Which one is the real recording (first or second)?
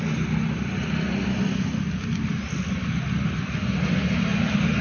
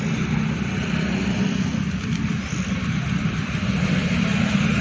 first